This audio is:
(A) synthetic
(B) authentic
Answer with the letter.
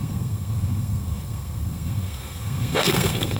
A